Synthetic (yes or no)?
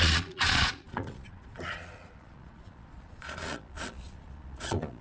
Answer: yes